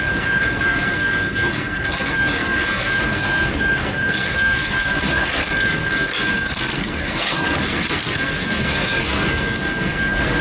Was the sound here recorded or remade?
remade